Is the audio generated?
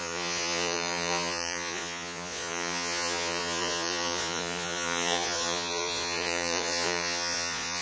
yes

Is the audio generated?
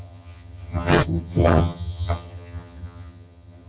yes